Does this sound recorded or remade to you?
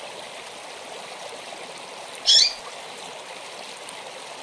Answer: recorded